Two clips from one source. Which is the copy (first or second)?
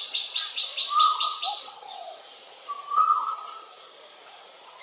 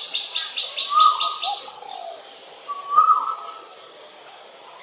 first